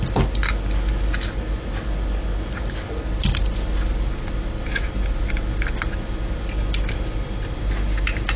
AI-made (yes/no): no